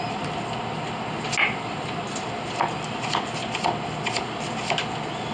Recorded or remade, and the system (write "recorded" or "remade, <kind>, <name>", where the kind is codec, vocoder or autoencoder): recorded